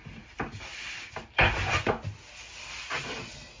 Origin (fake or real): real